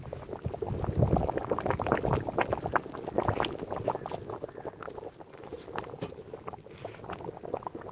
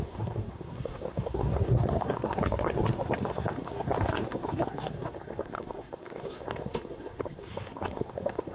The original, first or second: first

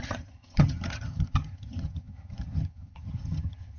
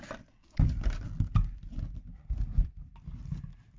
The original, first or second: second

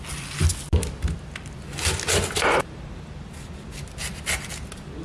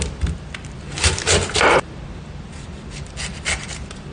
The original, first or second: first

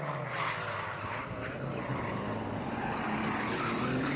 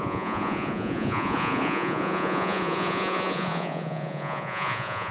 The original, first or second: first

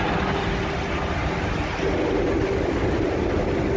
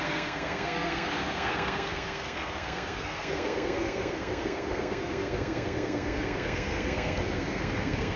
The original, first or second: first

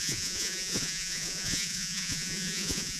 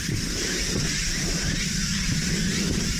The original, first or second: second